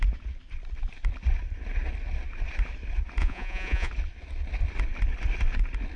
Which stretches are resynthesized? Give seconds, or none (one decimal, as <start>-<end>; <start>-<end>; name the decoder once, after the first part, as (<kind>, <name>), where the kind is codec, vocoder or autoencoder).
3.2-3.9 (vocoder, Vocos)